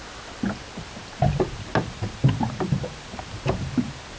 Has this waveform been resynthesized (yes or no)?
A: no